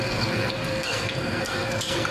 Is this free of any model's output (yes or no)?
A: no